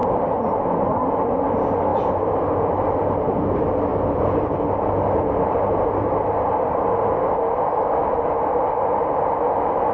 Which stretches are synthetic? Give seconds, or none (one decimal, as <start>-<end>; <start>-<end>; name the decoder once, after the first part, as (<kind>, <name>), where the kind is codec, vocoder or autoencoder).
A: 0.0-1.1 (vocoder, BigVGAN v2); 1.9-3.0